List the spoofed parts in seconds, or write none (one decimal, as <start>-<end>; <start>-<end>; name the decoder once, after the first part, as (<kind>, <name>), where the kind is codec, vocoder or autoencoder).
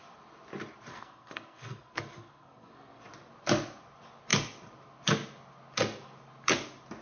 0.9-3.0 (codec, SNAC)